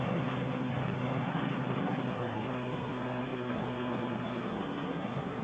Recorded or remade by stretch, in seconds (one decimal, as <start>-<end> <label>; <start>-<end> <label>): 0.0-5.4 remade